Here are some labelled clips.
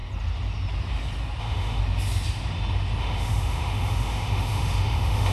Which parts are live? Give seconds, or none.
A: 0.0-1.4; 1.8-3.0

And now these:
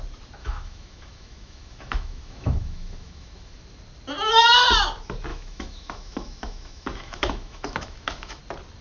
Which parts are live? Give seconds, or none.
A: 0.0-0.4; 3.6-5.3; 8.4-8.8

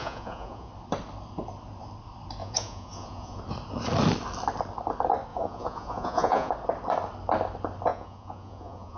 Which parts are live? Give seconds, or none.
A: 0.7-2.4; 3.4-5.3; 6.5-7.9

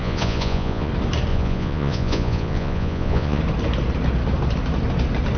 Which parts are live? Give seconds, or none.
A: 0.9-1.3; 3.4-5.4

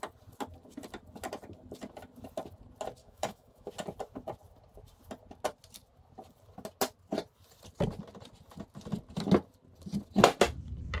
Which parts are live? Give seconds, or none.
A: 0.0-3.0; 3.7-11.0